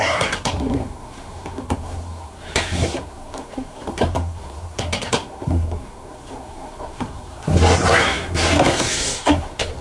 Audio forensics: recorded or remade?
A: remade